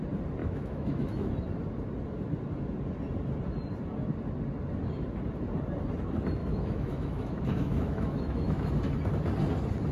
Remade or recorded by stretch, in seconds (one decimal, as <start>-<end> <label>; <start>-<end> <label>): 0.0-0.4 recorded; 0.4-1.3 remade; 1.3-6.4 recorded; 6.4-8.7 remade; 8.7-9.9 recorded

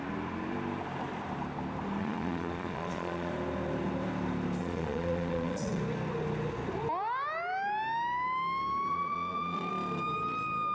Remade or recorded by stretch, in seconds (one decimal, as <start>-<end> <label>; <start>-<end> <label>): 0.0-2.0 recorded; 2.0-3.3 remade; 3.3-4.6 recorded; 4.6-5.8 remade; 5.8-8.9 recorded; 8.9-9.7 remade; 9.7-10.7 recorded

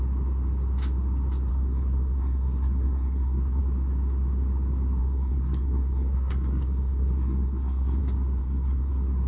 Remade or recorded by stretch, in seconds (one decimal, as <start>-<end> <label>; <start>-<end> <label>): 0.0-1.5 recorded; 1.5-3.6 remade; 3.6-5.0 recorded; 5.0-8.0 remade; 8.0-8.4 recorded; 8.4-8.9 remade; 8.9-9.3 recorded

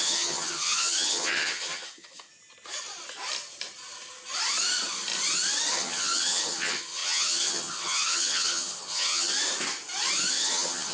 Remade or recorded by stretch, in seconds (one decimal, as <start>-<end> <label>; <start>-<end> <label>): 0.0-2.3 remade; 2.3-5.7 recorded; 5.7-9.3 remade; 9.3-10.3 recorded; 10.3-10.9 remade

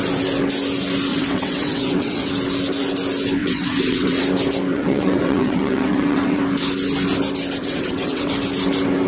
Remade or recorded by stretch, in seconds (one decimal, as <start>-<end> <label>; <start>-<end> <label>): 0.0-1.1 recorded; 1.1-2.3 remade; 2.3-3.4 recorded; 3.4-4.2 remade; 4.2-4.7 recorded; 4.7-6.4 remade; 6.4-7.6 recorded; 7.6-8.3 remade; 8.3-9.1 recorded